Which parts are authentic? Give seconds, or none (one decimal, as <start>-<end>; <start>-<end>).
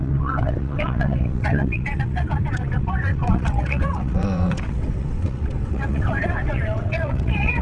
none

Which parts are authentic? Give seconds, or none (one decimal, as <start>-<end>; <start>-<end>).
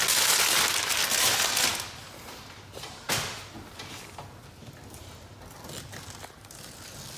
0.0-7.2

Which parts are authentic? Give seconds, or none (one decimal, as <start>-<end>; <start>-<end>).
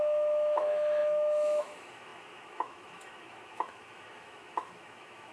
none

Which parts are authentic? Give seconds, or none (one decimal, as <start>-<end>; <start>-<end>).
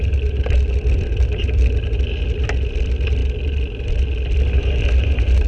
0.0-5.5